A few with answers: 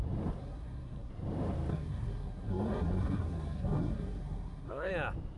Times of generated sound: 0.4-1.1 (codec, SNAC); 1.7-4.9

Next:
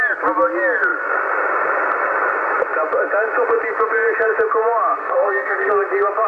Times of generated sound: 5.0-5.7 (codec, SNAC)

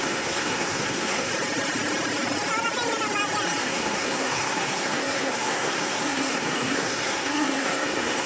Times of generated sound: 0.0-1.3 (codec, SNAC); 3.6-8.3

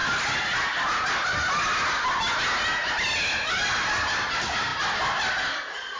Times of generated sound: none

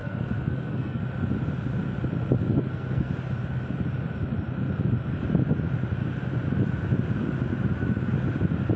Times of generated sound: 0.0-1.0 (codec, SNAC); 2.5-3.1

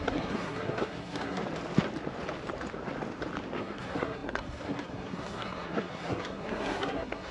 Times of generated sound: 0.0-1.4 (codec, SNAC); 3.6-7.3